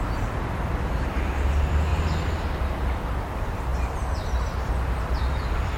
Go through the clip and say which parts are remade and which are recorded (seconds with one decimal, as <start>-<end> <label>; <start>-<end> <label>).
0.0-3.7 recorded; 3.7-4.7 remade; 4.7-5.8 recorded